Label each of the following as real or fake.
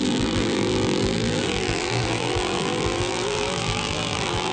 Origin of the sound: fake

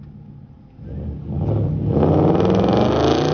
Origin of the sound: real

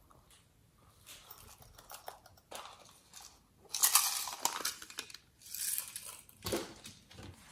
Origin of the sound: real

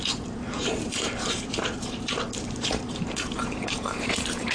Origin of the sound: fake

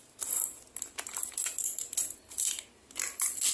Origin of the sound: real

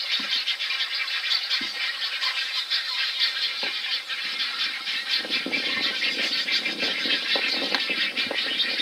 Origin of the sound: real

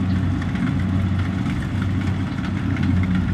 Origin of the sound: real